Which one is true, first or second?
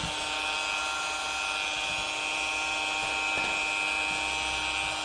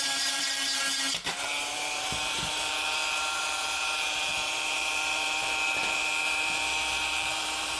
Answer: first